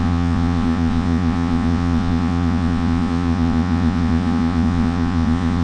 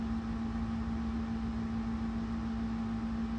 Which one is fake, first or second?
first